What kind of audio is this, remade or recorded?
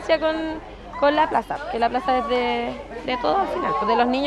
recorded